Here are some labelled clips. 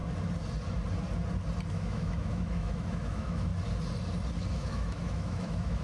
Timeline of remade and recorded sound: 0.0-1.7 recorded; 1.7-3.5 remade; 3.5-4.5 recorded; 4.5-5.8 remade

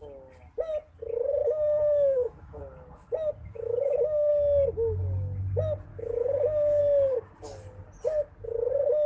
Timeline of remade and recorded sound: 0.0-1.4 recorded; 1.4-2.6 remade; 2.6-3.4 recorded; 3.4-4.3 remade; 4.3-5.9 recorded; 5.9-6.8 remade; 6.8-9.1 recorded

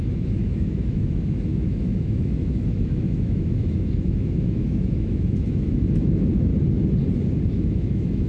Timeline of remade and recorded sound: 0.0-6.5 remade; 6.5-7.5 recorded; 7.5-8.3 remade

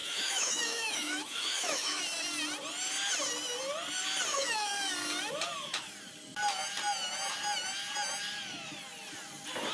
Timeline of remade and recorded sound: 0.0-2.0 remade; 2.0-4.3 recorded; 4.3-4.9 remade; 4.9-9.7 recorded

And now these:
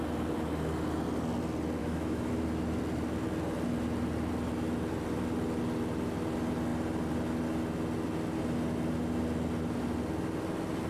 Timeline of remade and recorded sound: 0.0-1.8 recorded; 1.8-2.3 remade; 2.3-10.9 recorded